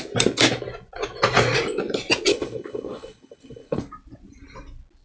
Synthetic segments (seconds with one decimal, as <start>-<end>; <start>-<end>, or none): 2.3-3.8